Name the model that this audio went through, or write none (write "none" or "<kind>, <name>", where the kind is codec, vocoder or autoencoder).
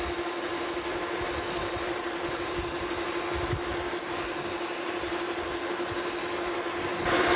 none